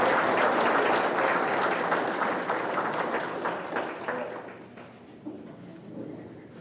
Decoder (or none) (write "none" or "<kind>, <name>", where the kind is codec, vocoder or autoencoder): none